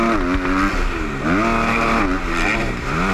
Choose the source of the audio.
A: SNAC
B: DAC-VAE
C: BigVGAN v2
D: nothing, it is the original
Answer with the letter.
D